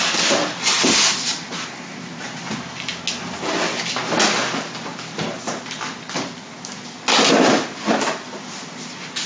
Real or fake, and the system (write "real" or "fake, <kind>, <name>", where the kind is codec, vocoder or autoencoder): real